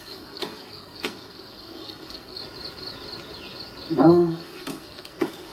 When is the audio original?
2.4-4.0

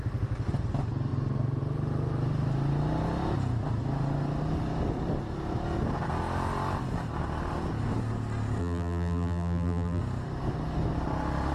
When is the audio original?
0.0-8.6; 10.0-11.5

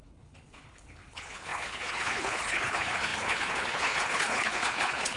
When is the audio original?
none

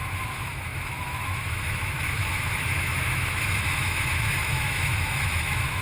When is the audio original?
none

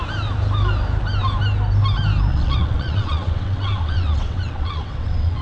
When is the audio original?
0.0-2.3

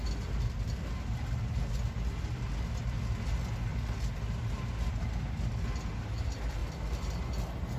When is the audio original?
0.0-7.8